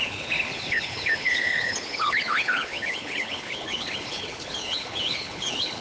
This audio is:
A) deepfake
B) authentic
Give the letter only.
A